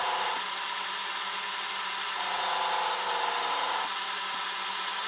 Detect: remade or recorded recorded